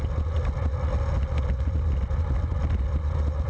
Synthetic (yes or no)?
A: no